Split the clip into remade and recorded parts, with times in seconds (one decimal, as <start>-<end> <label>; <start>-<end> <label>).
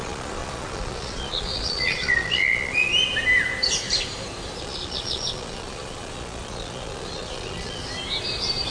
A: 0.0-2.9 remade; 2.9-4.6 recorded; 4.6-7.8 remade; 7.8-8.7 recorded